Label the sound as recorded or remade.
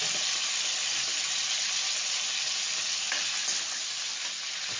recorded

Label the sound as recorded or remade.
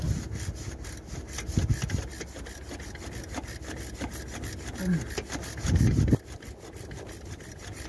recorded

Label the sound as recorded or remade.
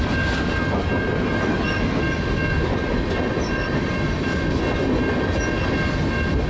recorded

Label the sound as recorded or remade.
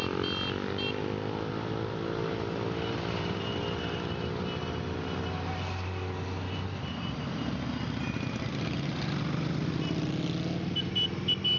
recorded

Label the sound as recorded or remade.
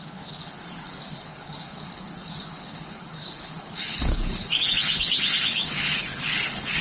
remade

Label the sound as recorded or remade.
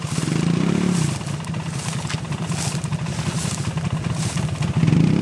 recorded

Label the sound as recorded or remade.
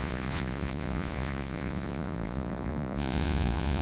remade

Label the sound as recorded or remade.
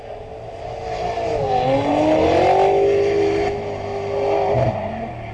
recorded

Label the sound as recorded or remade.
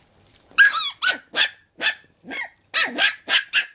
recorded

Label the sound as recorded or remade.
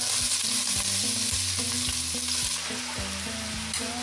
recorded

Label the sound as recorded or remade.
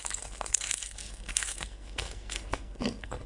remade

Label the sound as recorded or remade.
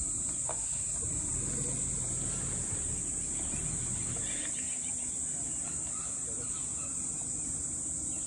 recorded